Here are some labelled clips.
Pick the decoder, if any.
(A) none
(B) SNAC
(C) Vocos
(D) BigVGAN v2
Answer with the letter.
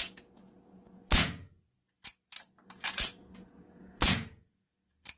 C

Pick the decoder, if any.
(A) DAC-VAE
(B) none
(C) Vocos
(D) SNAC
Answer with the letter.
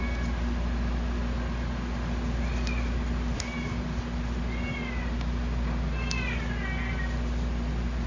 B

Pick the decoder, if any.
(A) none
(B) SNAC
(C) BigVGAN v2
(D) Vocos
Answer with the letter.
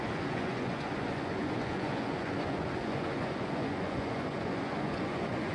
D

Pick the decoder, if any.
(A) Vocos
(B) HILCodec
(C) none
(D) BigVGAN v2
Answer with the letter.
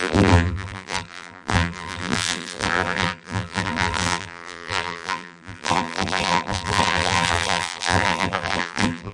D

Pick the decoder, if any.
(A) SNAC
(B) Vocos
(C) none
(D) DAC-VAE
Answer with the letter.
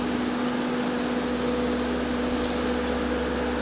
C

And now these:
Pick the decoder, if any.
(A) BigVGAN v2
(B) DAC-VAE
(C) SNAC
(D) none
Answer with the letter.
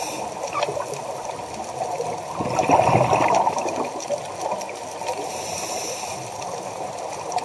D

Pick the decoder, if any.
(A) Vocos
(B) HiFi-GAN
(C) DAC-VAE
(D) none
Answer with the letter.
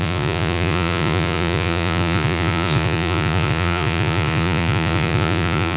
A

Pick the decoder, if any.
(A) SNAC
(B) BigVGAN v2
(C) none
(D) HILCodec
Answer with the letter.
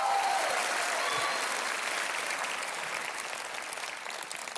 C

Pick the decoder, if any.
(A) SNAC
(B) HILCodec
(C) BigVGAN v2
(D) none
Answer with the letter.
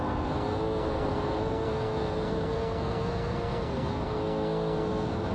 A